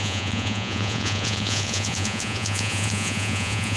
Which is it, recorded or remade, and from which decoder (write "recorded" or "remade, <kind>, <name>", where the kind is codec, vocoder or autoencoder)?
remade, vocoder, Vocos